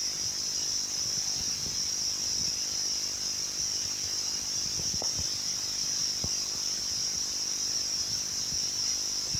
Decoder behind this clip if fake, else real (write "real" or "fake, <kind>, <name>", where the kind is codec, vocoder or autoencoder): real